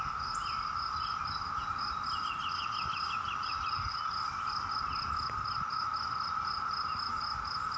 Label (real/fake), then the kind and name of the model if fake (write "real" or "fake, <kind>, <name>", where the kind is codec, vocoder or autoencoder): real